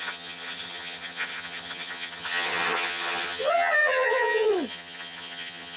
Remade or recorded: remade